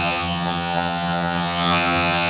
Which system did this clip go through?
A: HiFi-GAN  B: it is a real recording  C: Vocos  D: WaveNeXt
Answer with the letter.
A